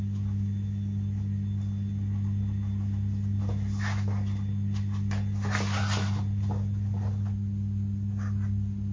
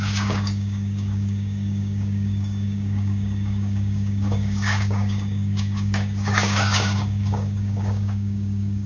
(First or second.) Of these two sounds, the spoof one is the second